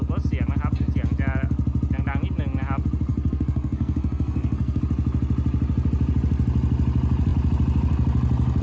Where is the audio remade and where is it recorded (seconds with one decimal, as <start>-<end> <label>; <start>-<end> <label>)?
0.0-3.1 recorded; 3.1-4.8 remade; 4.8-8.6 recorded